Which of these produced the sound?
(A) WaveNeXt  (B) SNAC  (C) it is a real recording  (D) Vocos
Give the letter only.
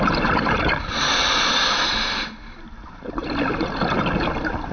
C